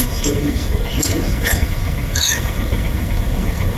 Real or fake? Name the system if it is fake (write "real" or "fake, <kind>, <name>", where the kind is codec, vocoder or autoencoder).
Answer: fake, codec, SNAC